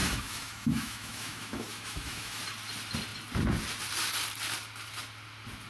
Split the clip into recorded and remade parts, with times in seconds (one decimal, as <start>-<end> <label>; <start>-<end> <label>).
0.0-2.4 remade; 2.4-5.7 recorded